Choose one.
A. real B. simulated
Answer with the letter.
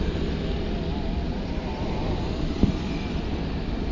A